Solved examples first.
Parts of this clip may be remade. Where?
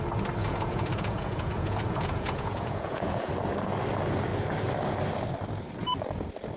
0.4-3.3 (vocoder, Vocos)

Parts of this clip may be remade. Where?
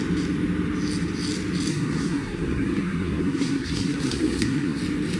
1.7-4.8 (codec, SNAC)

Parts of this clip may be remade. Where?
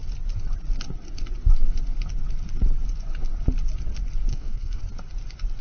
4.3-4.8 (codec, SNAC)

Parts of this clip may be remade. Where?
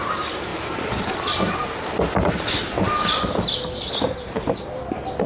none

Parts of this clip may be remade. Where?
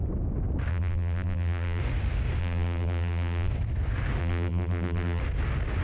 0.7-1.8 (vocoder, BigVGAN v2); 2.4-3.5; 4.2-5.2